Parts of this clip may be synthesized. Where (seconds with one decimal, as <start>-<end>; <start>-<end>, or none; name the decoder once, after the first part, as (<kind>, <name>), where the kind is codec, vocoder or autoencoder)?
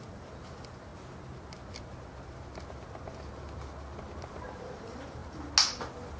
0.0-0.9 (vocoder, BigVGAN v2); 4.6-5.2